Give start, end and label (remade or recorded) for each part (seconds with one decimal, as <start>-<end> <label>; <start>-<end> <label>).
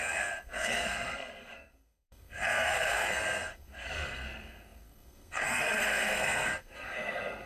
0.0-7.5 remade